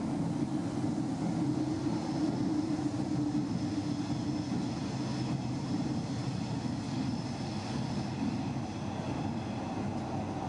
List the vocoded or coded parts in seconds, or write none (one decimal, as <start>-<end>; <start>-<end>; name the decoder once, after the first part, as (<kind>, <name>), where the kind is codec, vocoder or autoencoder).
5.1-6.6 (vocoder, BigVGAN v2)